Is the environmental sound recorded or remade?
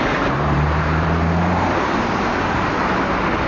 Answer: remade